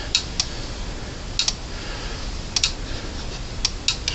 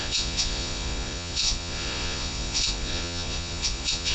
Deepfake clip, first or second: second